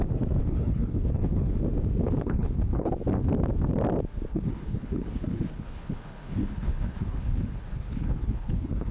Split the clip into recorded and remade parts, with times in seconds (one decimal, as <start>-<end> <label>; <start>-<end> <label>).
0.0-0.4 recorded; 0.4-1.6 remade; 1.6-2.0 recorded; 2.0-2.9 remade; 2.9-4.3 recorded; 4.3-8.9 remade